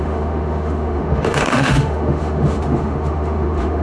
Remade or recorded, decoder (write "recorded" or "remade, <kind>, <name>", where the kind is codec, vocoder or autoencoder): remade, autoencoder, DAC-VAE